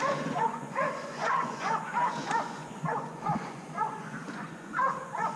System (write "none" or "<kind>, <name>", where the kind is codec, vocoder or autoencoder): vocoder, Vocos